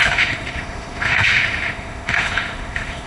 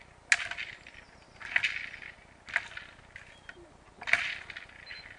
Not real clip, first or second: first